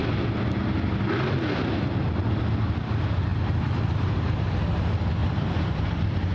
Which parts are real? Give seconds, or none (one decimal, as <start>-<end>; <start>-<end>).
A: 0.0-3.3; 4.6-5.2